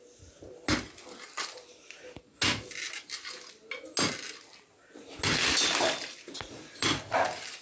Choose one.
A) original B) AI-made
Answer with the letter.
A